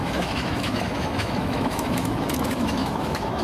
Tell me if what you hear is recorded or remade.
remade